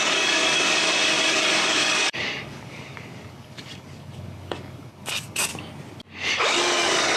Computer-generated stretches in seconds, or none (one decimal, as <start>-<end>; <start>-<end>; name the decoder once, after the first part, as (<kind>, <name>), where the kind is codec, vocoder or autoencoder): 0.0-5.5 (codec, DAC); 6.3-7.2